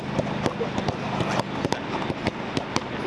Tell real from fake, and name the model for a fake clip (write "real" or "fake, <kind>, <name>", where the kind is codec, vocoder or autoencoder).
real